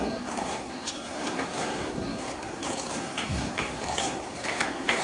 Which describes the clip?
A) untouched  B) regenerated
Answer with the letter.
B